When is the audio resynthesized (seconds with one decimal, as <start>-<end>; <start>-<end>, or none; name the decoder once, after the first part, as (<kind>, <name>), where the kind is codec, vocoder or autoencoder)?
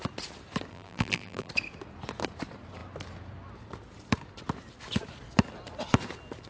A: 0.7-1.5 (vocoder, BigVGAN v2)